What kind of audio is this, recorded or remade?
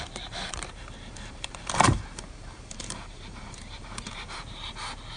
remade